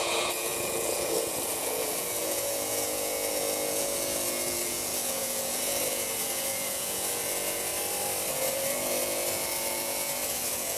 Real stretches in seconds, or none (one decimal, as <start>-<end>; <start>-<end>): 7.7-8.3

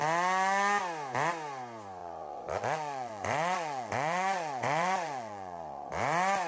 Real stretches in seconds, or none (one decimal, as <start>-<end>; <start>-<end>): 0.0-2.0; 5.9-6.5

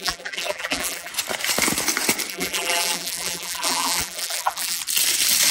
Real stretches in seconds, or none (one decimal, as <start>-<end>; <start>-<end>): 1.1-2.3; 4.8-5.5